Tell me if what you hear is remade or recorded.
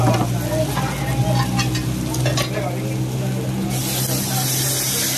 recorded